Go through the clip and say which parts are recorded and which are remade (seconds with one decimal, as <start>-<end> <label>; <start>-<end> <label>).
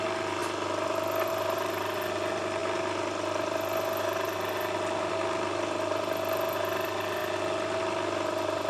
0.0-8.7 recorded